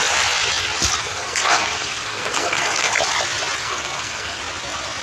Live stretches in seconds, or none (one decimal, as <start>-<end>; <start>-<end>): 0.0-1.0; 2.9-3.6; 4.4-5.0